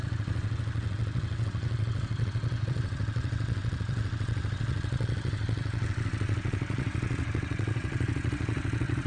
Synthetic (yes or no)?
yes